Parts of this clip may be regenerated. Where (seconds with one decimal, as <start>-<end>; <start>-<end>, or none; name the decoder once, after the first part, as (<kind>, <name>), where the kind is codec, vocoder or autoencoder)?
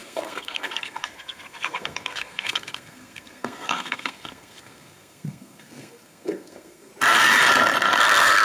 0.0-6.9 (codec, SNAC); 8.0-8.4